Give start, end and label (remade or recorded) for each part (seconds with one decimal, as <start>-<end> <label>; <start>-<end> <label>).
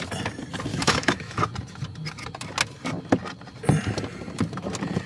0.0-0.7 recorded; 0.7-1.4 remade; 1.4-5.1 recorded